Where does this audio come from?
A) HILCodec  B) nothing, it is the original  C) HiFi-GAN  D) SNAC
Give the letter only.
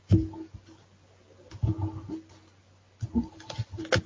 B